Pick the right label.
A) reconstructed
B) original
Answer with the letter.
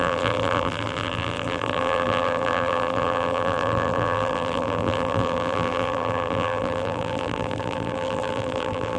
A